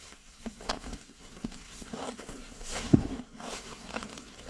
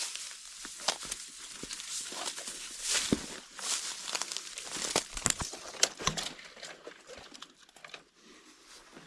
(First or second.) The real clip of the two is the second